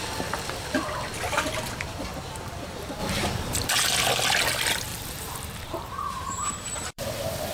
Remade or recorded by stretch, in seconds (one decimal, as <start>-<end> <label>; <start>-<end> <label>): 0.0-3.0 recorded; 3.0-3.7 remade; 3.7-4.9 recorded; 4.9-7.1 remade; 7.1-7.5 recorded